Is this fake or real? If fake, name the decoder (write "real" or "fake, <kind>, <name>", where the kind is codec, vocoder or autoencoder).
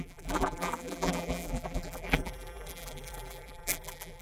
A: fake, vocoder, BigVGAN v2